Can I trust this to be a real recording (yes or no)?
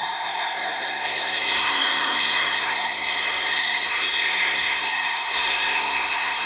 no